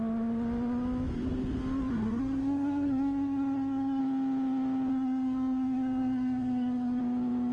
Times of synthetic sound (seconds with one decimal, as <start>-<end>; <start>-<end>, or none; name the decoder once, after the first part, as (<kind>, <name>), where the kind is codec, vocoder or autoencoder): 1.9-4.0 (codec, SNAC); 4.9-7.0